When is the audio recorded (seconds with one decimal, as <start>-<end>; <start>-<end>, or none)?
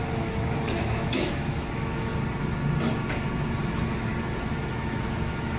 2.1-3.6; 4.1-4.7